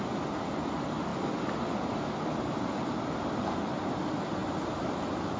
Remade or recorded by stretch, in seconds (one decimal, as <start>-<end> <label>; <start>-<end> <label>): 0.0-5.4 recorded